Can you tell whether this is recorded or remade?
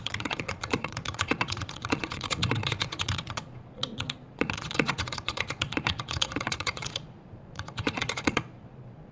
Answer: remade